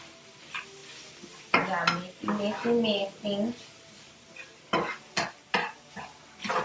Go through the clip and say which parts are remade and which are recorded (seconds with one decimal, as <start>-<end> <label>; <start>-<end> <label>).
0.0-6.6 recorded